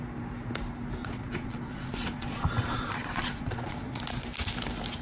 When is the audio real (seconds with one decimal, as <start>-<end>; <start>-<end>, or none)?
0.0-1.0; 4.0-5.0